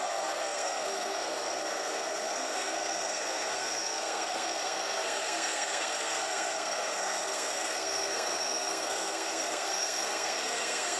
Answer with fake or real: fake